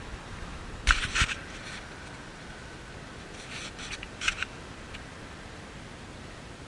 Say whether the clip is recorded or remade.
recorded